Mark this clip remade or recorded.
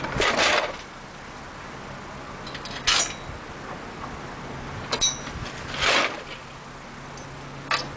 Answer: recorded